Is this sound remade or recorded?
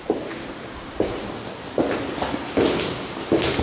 recorded